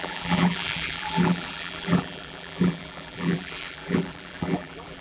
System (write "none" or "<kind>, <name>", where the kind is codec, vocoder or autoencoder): vocoder, BigVGAN v2